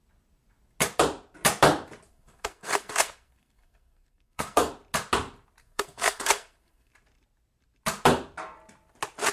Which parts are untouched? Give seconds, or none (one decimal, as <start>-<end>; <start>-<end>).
0.0-2.1; 4.7-5.6; 6.9-9.3